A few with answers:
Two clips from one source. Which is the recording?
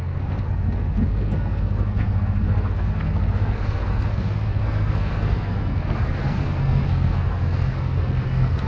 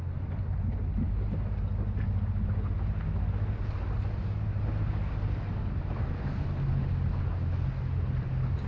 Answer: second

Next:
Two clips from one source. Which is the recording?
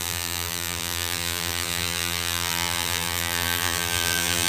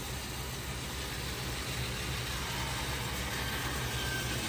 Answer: second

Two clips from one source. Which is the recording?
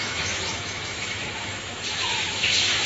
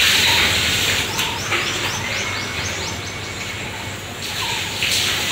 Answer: second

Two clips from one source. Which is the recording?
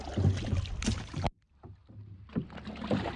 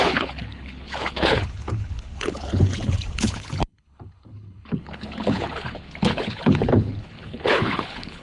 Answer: first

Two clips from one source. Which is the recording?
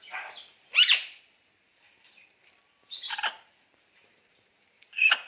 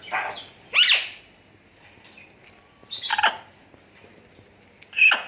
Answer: second